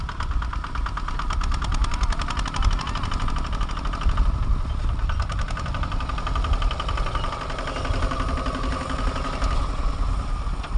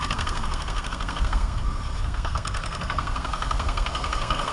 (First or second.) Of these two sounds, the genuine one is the first